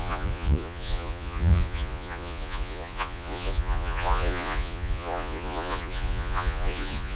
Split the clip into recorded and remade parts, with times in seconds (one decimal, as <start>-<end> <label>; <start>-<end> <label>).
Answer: 0.0-7.2 remade